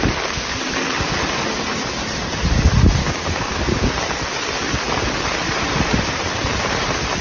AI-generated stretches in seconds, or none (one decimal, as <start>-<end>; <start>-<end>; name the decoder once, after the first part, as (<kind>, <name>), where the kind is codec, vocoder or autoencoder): 3.0-3.9 (codec, DAC)